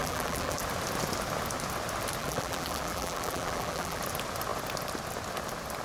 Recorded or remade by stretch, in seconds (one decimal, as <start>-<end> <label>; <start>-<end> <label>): 0.0-0.6 remade; 0.6-2.2 recorded; 2.2-4.0 remade; 4.0-5.8 recorded